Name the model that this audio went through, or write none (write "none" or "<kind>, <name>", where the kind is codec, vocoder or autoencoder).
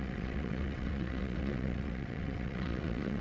vocoder, WaveNeXt